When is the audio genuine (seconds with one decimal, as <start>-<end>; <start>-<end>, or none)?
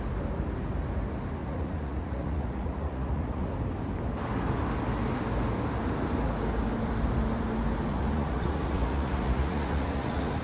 0.0-1.4; 3.5-7.9